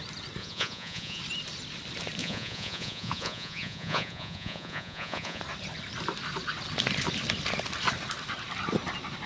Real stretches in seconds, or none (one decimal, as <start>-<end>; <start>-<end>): 0.0-0.4; 1.2-2.2; 5.4-9.3

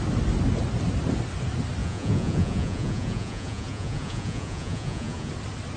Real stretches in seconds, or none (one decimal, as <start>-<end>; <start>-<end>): 0.0-1.8; 5.3-5.8

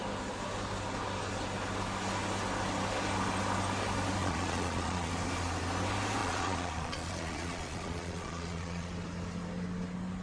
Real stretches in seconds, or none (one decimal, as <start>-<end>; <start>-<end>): 0.0-4.2; 5.1-6.2; 8.9-10.2